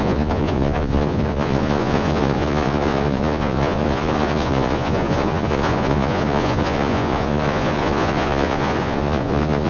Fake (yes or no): yes